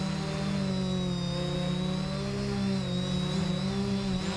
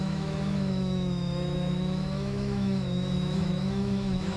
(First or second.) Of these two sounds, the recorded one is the first